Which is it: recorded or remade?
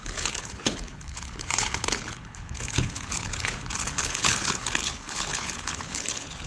remade